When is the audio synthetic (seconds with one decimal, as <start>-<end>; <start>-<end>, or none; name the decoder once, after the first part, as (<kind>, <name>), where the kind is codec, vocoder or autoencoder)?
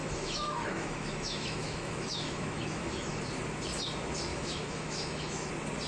0.0-3.2 (autoencoder, DAC-VAE); 4.3-5.5